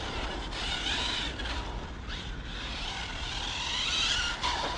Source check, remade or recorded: remade